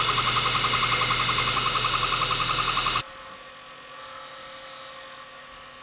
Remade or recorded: recorded